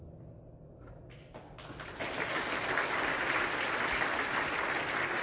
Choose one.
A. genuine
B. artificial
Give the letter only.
A